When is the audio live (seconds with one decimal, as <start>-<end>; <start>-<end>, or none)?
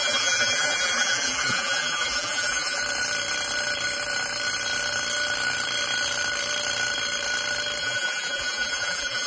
2.8-7.8